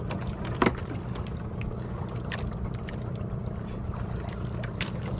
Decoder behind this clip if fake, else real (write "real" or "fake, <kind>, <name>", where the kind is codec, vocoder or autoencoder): real